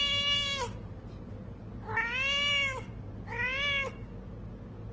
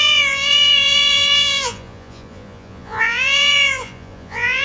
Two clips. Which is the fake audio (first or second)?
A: second